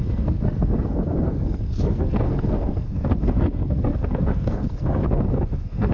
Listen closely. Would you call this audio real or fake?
fake